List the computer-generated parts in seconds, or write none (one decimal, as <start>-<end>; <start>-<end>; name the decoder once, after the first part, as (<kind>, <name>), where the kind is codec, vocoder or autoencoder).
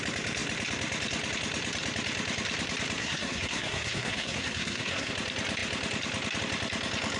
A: 3.0-5.1 (codec, SNAC)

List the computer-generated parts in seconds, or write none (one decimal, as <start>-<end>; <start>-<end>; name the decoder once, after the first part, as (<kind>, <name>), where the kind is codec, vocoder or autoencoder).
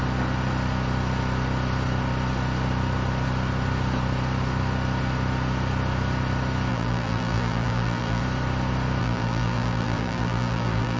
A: 6.7-8.2 (vocoder, BigVGAN v2); 9.0-11.0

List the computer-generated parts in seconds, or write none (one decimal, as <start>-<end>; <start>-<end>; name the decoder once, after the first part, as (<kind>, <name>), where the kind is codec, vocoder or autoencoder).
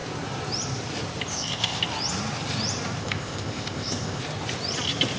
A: 1.3-1.8 (codec, ZipCodec); 3.0-4.2